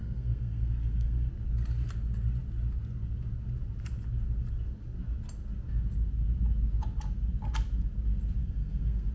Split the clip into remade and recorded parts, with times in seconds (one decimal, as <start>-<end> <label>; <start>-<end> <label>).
0.0-1.3 remade; 1.3-8.4 recorded; 8.4-9.1 remade